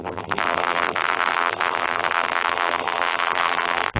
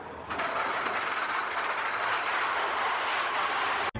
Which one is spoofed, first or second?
first